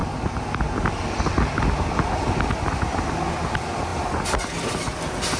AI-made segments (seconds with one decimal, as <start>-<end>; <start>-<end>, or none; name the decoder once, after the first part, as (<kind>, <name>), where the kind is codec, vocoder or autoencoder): none